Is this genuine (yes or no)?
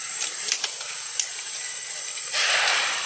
yes